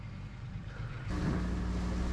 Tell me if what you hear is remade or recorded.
recorded